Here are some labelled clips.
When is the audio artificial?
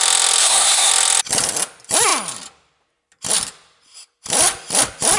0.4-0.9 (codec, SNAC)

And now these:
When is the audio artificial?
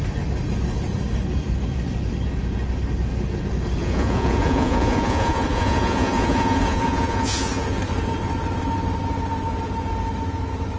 3.8-7.8 (vocoder, Vocos)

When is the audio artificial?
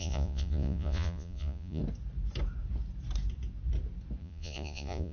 0.0-1.8 (vocoder, Vocos); 4.2-5.1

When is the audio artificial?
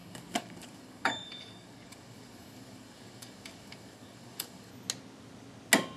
0.0-4.7 (codec, DAC)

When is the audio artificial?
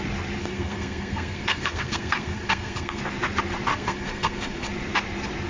0.4-3.0 (codec, SNAC); 3.7-4.7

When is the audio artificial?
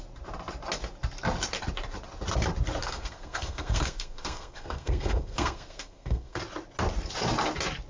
2.8-6.4 (codec, SNAC)